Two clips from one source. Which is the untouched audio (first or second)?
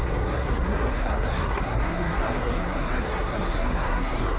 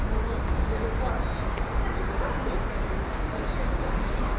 second